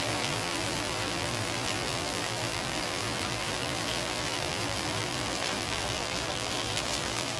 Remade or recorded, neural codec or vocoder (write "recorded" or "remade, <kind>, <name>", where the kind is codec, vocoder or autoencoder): remade, vocoder, BigVGAN v2